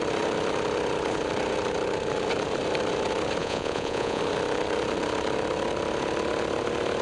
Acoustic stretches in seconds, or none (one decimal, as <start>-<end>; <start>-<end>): 0.0-3.4; 4.2-7.0